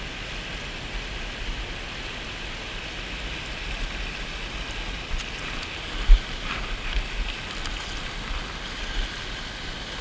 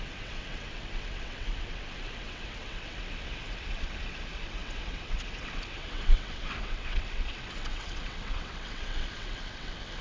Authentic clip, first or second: first